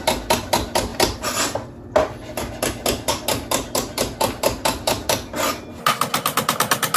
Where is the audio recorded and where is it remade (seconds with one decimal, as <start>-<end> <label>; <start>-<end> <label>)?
0.0-7.0 recorded